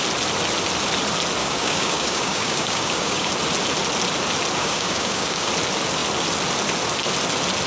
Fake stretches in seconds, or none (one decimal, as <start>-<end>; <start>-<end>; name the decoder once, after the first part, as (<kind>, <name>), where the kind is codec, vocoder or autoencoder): 1.4-3.3 (codec, DAC); 4.6-5.5